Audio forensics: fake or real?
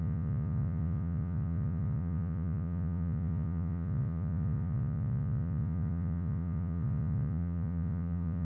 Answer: fake